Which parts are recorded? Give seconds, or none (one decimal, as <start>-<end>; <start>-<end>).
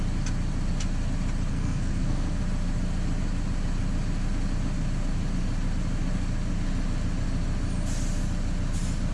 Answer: 0.0-1.5; 2.4-9.1